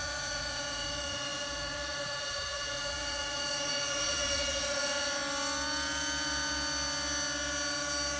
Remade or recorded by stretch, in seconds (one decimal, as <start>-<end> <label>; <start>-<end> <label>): 0.0-5.2 remade; 5.2-8.2 recorded